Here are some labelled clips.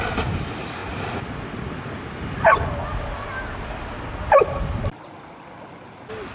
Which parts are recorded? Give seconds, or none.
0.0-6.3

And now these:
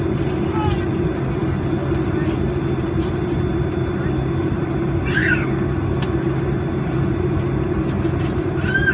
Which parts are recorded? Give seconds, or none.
0.0-8.9

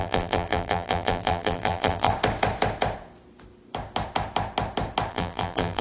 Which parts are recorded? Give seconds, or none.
2.1-5.1

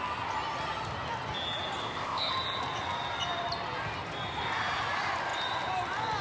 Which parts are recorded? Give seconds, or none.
0.0-1.8; 2.3-6.2

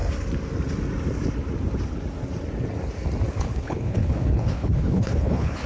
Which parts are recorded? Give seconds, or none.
0.0-3.4

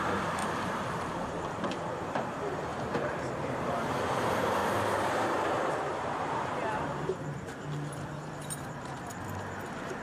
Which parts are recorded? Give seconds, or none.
0.0-0.4; 1.9-2.7; 3.8-4.6; 9.0-10.0

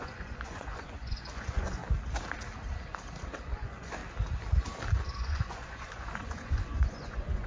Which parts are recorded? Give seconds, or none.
1.8-3.4; 4.0-5.0